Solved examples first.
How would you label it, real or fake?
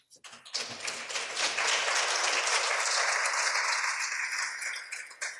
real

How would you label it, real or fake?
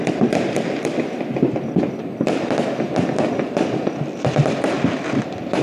real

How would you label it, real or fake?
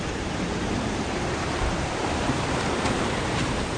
fake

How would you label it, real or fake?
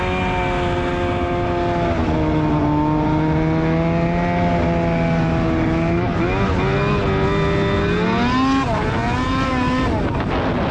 real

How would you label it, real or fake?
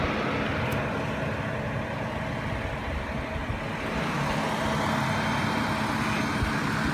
real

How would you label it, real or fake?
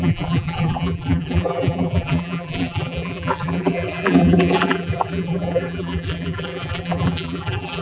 fake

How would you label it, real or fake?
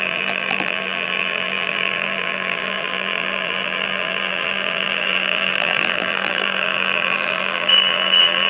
fake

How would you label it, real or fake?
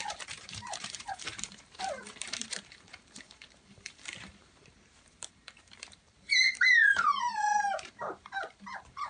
fake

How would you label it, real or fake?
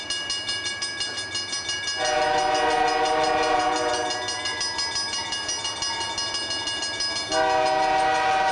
real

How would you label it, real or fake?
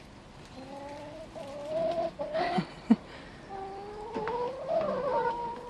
real